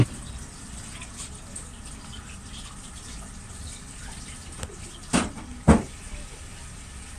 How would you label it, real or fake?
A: fake